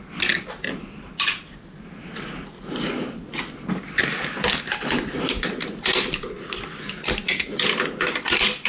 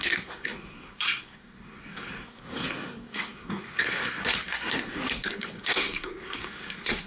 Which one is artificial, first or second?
second